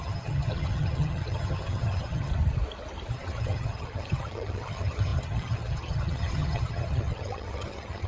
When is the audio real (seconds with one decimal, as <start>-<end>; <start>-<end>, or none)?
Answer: 2.3-3.1